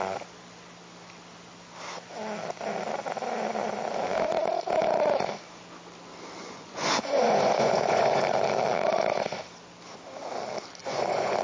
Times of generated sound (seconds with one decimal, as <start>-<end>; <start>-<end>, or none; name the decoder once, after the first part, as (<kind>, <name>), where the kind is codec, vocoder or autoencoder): 6.4-8.2 (vocoder, Vocos); 10.8-11.4